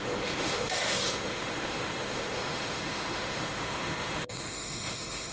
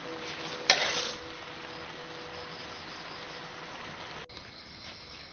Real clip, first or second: second